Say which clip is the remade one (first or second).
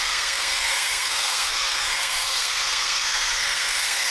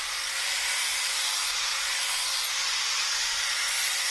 first